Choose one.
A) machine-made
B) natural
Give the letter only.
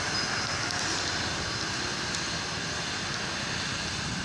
B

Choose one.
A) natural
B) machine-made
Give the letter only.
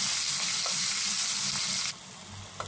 A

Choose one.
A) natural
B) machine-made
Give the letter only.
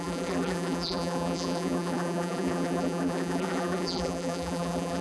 B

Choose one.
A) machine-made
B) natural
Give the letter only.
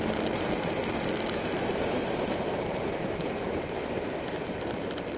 A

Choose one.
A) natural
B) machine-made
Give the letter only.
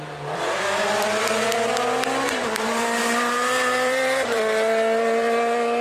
B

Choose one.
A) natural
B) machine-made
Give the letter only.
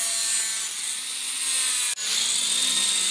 A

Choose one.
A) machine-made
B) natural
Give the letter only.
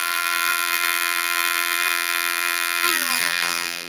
A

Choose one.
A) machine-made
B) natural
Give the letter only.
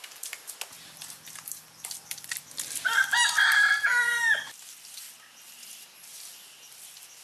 B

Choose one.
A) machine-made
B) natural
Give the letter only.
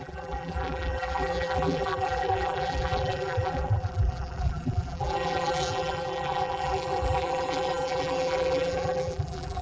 A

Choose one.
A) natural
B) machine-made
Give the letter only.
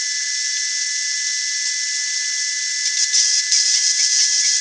A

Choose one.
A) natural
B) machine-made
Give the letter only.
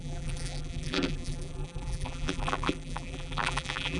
B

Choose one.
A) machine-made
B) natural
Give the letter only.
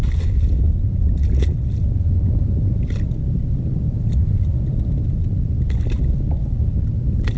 B